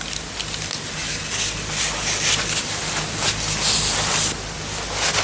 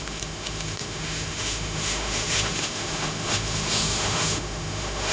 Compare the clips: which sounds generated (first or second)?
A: second